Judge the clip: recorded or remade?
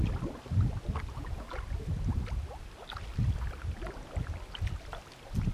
recorded